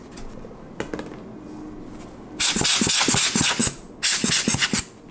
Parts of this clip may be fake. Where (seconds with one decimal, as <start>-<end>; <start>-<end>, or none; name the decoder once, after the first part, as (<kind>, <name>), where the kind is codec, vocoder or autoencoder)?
none